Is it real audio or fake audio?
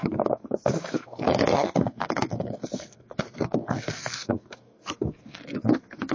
fake